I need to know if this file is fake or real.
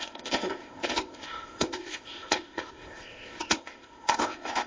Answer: fake